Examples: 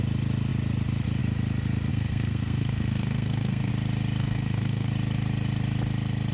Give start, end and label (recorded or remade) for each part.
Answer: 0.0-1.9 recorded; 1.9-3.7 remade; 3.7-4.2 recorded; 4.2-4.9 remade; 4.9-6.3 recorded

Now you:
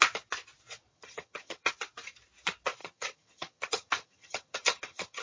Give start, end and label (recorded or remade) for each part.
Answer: 0.0-0.9 recorded; 0.9-1.7 remade; 1.7-2.8 recorded; 2.8-5.2 remade

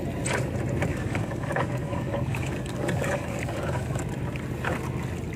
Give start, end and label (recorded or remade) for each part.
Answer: 0.0-0.9 recorded; 0.9-4.1 remade; 4.1-5.4 recorded

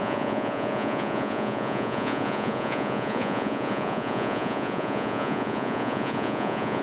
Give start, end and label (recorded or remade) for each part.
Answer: 0.0-6.8 remade

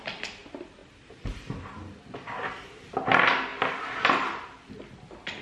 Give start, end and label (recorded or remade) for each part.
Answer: 0.0-5.4 recorded